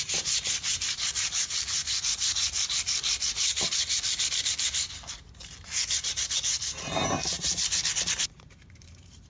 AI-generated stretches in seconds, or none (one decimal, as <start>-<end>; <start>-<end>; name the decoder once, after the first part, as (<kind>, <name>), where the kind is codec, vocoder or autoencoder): 0.0-9.3 (vocoder, BigVGAN v2)